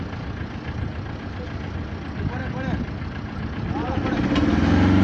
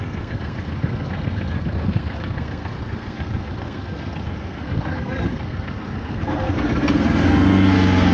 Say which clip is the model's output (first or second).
second